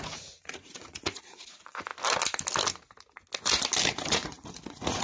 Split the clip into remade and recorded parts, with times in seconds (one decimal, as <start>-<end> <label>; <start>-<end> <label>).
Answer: 0.0-1.9 remade; 1.9-4.1 recorded; 4.1-5.0 remade